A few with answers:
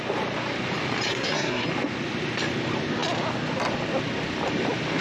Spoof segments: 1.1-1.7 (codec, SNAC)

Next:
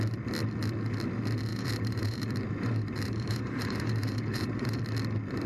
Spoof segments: 1.5-4.8 (vocoder, BigVGAN v2)

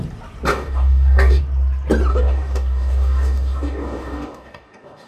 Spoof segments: 0.5-1.4 (codec, DAC); 2.1-5.1

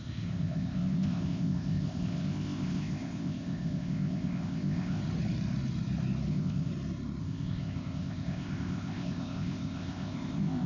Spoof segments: 0.0-5.0 (codec, ZipCodec); 6.3-6.7; 7.2-10.7

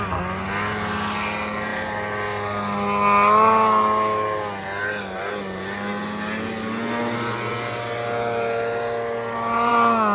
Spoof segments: none